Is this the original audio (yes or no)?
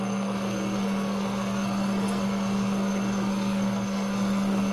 no